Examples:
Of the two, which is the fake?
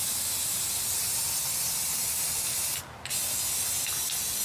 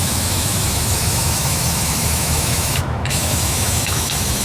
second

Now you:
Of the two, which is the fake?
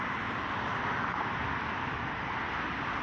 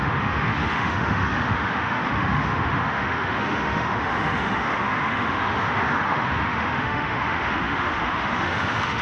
second